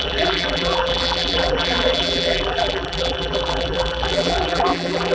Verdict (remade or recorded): remade